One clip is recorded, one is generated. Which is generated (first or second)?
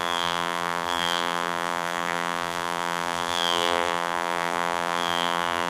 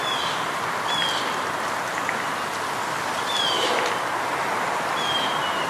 first